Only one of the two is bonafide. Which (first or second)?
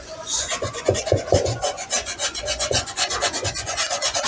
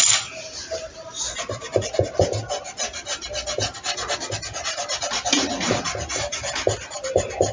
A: second